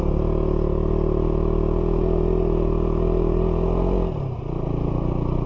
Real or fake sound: real